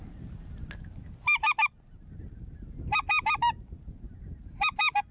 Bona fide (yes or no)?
yes